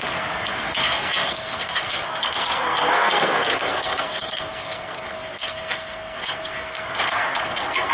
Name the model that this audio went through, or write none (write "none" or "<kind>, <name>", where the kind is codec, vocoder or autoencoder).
codec, SNAC